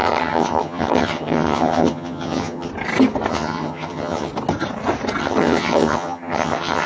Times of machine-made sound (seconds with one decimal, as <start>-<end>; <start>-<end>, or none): 0.0-2.7; 3.3-4.3; 5.2-6.9